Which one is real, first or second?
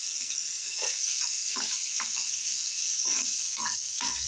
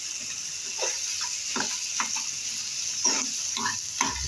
second